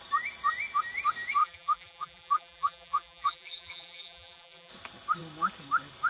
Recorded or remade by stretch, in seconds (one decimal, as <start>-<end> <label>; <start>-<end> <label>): 0.0-1.4 recorded; 1.4-4.7 remade; 4.7-6.1 recorded